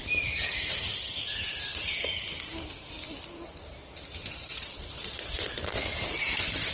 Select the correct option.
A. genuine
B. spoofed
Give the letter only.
B